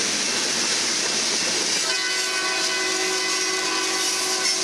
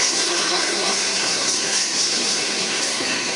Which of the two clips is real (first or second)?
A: first